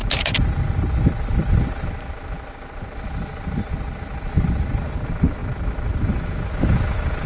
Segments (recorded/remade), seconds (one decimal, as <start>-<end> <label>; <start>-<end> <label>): 0.0-3.7 recorded; 3.7-5.4 remade; 5.4-7.3 recorded